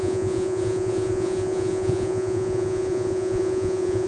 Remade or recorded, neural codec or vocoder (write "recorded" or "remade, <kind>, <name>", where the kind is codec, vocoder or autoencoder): remade, vocoder, Vocos